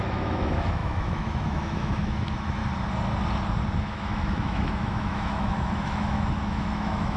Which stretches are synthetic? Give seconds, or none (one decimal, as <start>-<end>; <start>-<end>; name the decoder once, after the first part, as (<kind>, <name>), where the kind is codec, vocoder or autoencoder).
0.0-2.6 (autoencoder, DAC-VAE); 3.8-7.2